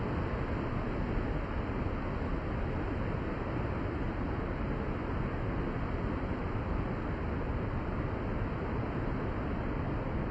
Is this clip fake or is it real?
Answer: real